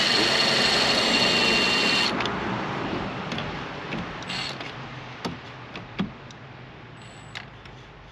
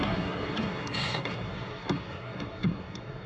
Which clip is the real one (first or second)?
first